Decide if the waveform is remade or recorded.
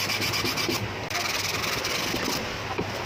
recorded